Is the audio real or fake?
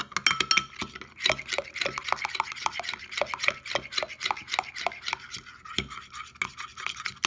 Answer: real